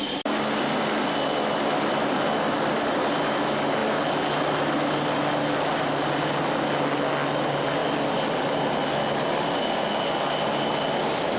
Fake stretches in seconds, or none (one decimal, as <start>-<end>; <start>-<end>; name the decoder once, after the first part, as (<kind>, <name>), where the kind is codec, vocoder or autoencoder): none